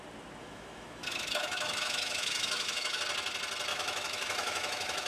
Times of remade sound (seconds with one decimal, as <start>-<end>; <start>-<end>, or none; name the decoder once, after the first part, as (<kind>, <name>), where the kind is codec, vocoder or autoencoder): 0.4-3.0 (autoencoder, DAC-VAE); 3.7-5.1